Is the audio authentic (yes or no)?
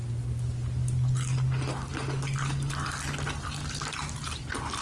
yes